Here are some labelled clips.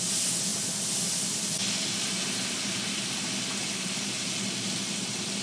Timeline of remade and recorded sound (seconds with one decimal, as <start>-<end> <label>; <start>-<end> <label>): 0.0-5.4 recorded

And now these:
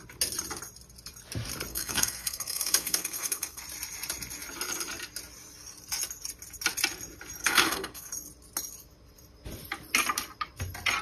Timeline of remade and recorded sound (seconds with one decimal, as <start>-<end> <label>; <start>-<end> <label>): 0.0-1.7 recorded; 1.7-3.6 remade; 3.6-7.4 recorded; 7.4-8.1 remade; 8.1-11.0 recorded

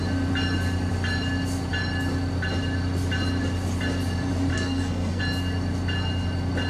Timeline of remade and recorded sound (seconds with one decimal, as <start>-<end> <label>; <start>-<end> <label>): 0.0-4.5 recorded; 4.5-5.2 remade; 5.2-6.7 recorded

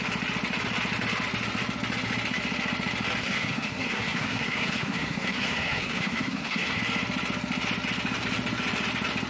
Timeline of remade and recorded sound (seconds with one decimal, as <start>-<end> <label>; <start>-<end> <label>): 0.0-3.2 recorded; 3.2-6.8 remade; 6.8-9.3 recorded

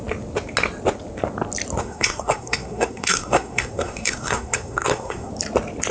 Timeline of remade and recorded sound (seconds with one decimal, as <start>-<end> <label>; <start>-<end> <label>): 0.0-1.8 recorded; 1.8-5.3 remade; 5.3-5.9 recorded

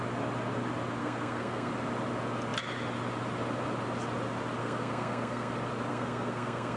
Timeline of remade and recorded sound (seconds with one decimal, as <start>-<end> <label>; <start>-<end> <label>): 0.0-1.0 recorded; 1.0-1.7 remade; 1.7-4.6 recorded; 4.6-5.5 remade; 5.5-5.9 recorded; 5.9-6.8 remade